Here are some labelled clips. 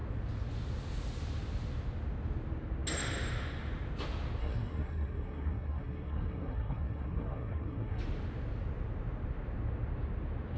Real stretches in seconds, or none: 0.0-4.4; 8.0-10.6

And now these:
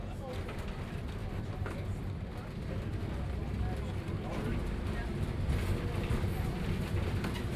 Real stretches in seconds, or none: 0.0-7.6

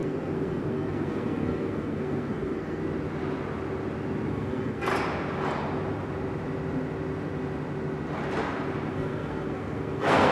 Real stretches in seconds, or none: 2.8-4.3; 4.9-8.9